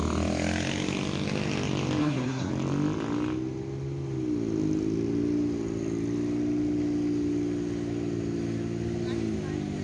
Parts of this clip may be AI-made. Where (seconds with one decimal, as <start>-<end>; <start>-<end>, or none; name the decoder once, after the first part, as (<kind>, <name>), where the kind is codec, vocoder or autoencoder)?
2.0-2.5 (codec, SNAC)